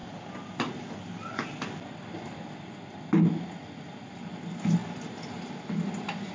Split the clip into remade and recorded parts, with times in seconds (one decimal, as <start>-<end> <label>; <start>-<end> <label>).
0.0-6.3 recorded